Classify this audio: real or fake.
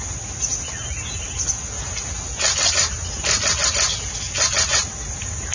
real